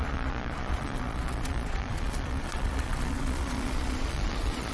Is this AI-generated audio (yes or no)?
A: yes